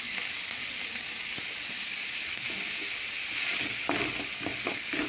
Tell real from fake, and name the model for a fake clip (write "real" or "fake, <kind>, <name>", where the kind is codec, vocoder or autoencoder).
real